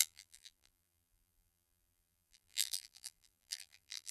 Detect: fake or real fake